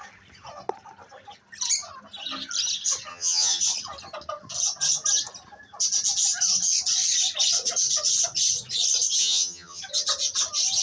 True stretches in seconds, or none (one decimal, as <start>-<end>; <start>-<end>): 0.0-3.1; 3.6-9.2; 9.8-10.8